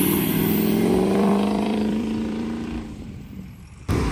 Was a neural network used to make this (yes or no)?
yes